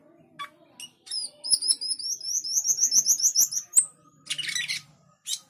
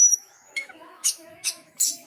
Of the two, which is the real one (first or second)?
first